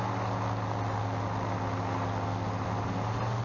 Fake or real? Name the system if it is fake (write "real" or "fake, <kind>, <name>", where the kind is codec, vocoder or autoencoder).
real